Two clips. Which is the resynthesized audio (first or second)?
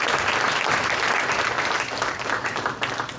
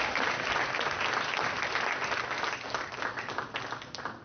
first